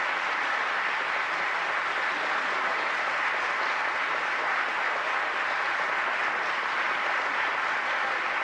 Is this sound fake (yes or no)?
no